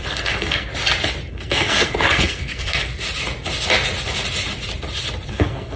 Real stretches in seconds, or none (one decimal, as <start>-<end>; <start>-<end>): 0.7-1.3; 2.9-5.3